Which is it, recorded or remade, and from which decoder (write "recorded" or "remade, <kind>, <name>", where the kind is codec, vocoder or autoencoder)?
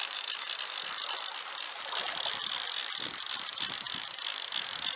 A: recorded